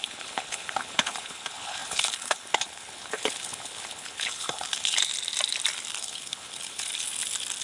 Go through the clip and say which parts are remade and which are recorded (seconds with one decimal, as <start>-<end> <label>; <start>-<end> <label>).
0.0-5.1 remade; 5.1-6.0 recorded; 6.0-6.9 remade; 6.9-7.6 recorded